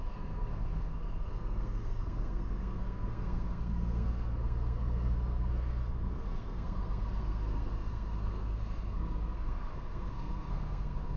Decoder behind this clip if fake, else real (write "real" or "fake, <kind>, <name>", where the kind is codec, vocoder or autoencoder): fake, codec, SNAC